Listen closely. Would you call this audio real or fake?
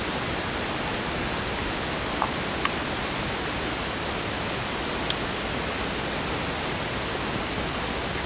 real